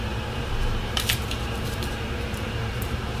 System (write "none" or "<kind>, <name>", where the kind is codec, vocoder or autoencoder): vocoder, BigVGAN v2